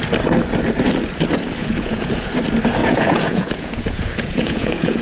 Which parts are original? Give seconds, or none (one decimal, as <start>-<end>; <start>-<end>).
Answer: 0.0-1.6; 2.3-2.8